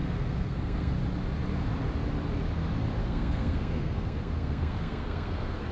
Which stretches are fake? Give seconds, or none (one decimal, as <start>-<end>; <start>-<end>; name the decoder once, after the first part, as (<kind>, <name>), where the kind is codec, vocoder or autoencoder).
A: 0.0-0.9 (codec, SNAC); 3.0-5.7